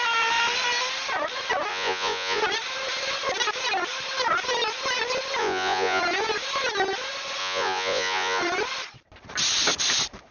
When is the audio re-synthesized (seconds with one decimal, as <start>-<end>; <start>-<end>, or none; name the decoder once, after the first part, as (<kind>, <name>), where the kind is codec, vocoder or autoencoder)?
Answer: 1.7-2.4 (vocoder, Vocos); 5.4-6.0; 7.4-8.4